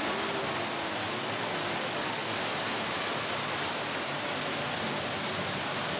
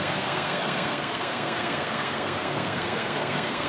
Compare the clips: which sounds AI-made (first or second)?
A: second